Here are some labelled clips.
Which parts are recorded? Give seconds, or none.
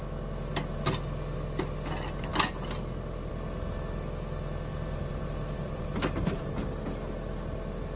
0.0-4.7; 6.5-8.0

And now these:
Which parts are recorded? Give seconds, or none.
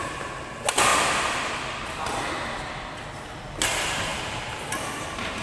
0.0-0.9; 2.3-4.1; 4.7-5.4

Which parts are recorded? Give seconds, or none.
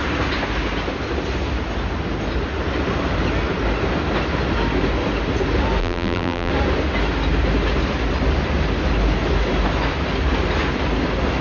0.0-5.8; 6.5-11.4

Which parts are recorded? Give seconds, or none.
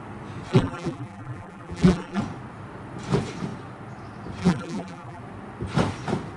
0.0-0.5; 2.2-4.4; 5.2-6.4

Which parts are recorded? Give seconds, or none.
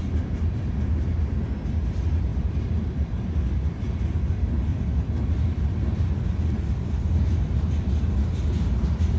0.0-2.3; 4.3-4.7; 8.0-9.2